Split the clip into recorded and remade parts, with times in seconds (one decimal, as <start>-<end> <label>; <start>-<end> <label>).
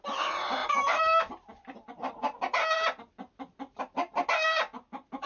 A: 0.0-5.3 recorded